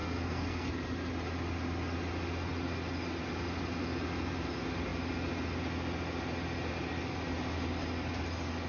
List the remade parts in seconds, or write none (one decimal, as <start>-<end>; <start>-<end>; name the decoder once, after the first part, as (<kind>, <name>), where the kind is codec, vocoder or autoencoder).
0.0-0.7 (codec, SNAC)